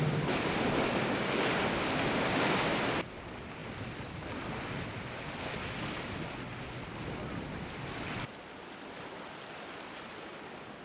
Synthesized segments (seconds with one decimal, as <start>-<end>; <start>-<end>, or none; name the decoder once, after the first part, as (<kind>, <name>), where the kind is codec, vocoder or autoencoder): none